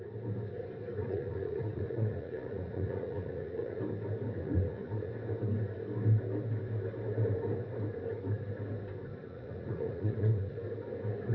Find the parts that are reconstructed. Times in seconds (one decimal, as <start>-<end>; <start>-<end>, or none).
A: 1.0-3.8; 4.4-5.1; 9.2-10.6